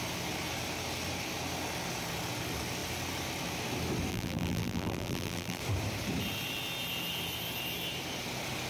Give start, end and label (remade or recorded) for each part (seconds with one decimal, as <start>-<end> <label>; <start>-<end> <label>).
0.0-4.1 recorded; 4.1-5.6 remade; 5.6-8.7 recorded